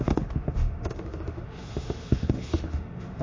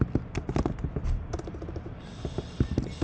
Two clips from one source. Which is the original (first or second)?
second